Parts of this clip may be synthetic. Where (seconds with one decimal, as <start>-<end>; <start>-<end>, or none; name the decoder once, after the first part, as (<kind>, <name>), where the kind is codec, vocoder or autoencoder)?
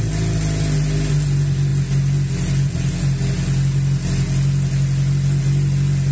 none